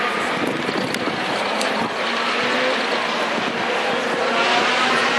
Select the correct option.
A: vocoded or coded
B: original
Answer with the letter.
B